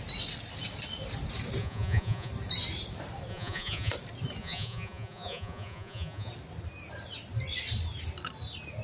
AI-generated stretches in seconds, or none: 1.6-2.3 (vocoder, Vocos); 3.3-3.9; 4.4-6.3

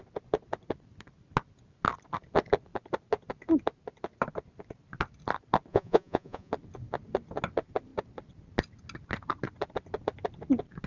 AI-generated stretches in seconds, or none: 5.7-6.5 (vocoder, Vocos)

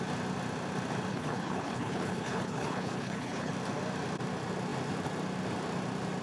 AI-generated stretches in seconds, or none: 1.1-3.5 (codec, HILCodec)